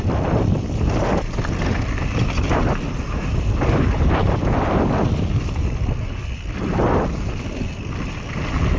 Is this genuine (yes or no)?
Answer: yes